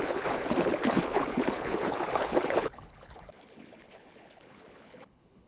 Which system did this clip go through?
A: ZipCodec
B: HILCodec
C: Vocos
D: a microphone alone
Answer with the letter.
B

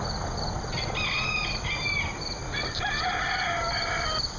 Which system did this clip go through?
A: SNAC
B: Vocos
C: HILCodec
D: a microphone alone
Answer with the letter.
D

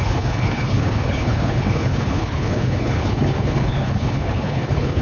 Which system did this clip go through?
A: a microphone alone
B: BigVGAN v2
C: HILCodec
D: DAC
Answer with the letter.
C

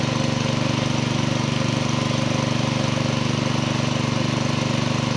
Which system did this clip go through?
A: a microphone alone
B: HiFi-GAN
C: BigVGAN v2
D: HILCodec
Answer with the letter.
A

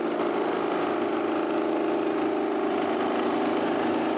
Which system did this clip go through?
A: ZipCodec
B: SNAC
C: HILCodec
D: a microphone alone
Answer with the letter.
D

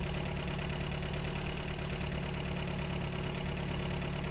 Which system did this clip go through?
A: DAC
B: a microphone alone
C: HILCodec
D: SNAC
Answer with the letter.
B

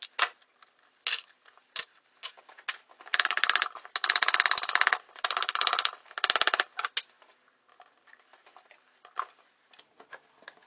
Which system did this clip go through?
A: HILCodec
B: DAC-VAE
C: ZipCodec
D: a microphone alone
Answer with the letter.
D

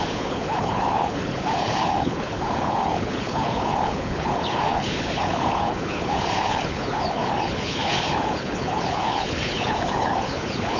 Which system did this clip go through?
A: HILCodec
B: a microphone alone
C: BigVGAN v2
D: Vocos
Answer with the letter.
A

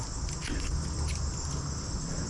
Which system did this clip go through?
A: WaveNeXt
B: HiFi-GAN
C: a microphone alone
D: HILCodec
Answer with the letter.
C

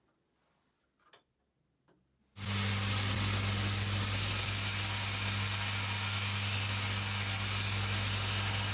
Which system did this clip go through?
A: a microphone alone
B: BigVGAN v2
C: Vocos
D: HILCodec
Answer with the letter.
A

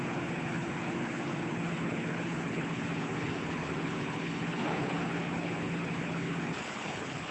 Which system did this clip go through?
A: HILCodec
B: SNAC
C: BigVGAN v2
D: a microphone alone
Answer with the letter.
A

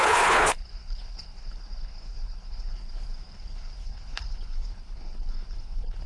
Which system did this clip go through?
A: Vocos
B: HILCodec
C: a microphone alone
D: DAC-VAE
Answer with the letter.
B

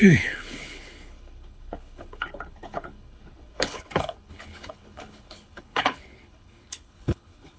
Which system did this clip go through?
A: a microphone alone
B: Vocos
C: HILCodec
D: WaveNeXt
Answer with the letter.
C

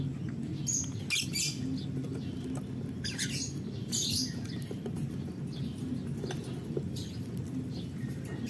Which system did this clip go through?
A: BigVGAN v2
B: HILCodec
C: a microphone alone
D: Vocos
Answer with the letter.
C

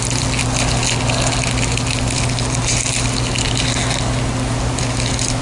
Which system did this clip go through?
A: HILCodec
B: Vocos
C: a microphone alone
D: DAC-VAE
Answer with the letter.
C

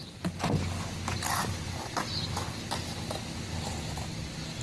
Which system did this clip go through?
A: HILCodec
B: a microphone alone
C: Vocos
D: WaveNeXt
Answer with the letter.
B